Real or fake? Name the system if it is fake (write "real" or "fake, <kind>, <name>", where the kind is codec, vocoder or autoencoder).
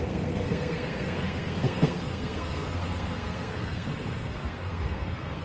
fake, codec, SNAC